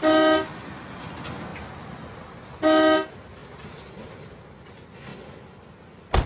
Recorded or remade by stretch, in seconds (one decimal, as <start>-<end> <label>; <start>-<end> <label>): 0.0-6.3 recorded